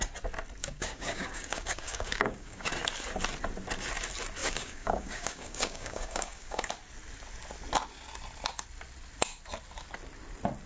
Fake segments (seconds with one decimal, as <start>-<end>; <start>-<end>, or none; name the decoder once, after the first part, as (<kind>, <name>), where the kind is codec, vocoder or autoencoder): 0.6-2.7 (codec, DAC); 4.4-6.7